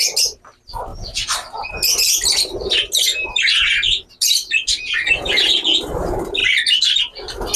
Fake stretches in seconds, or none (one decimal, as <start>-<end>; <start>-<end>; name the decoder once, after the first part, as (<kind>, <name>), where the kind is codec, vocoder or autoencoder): none